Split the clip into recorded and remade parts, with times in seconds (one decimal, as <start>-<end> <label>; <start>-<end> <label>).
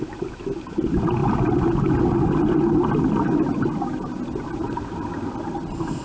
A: 0.0-6.0 recorded